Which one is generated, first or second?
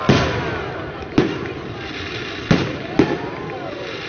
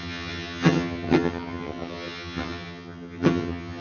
second